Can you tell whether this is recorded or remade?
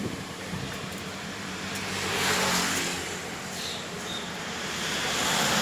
remade